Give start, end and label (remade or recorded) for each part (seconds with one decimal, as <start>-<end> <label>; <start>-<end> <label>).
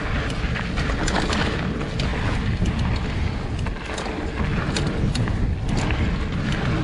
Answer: 0.0-6.8 recorded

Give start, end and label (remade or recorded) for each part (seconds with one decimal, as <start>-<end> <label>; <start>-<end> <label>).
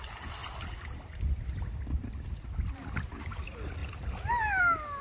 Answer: 0.0-5.0 recorded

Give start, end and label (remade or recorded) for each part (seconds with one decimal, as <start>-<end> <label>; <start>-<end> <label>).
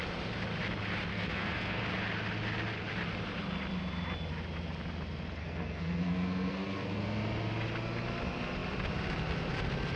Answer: 0.0-1.1 recorded; 1.1-1.8 remade; 1.8-5.4 recorded; 5.4-7.0 remade; 7.0-10.0 recorded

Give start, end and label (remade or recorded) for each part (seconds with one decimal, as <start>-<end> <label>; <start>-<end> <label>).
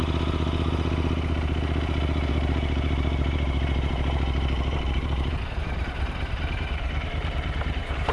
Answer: 0.0-2.3 recorded; 2.3-8.1 remade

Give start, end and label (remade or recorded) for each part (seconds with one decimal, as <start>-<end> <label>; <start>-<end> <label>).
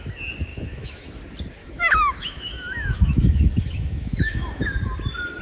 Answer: 0.0-0.5 recorded; 0.5-1.2 remade; 1.2-1.6 recorded; 1.6-4.8 remade; 4.8-5.4 recorded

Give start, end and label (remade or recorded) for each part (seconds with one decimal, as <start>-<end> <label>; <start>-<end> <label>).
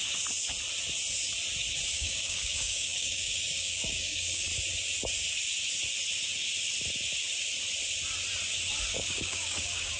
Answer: 0.0-1.9 recorded; 1.9-4.5 remade; 4.5-8.9 recorded; 8.9-10.0 remade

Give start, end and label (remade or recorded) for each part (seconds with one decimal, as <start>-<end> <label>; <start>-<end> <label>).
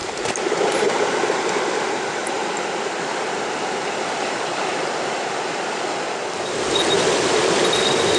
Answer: 0.0-2.1 recorded; 2.1-8.2 remade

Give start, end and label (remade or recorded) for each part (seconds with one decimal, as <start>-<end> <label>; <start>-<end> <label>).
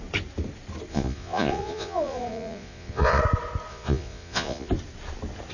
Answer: 0.0-0.9 recorded; 0.9-3.2 remade; 3.2-3.7 recorded; 3.7-4.7 remade; 4.7-5.5 recorded